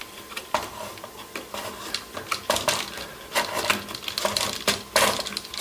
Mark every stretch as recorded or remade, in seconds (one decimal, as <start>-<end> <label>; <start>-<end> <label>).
0.0-0.9 remade; 0.9-5.6 recorded